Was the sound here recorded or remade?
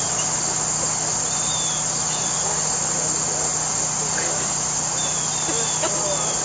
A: recorded